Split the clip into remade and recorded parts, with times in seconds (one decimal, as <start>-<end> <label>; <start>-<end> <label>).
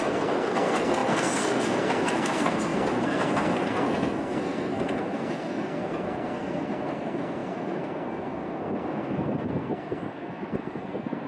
0.0-11.3 remade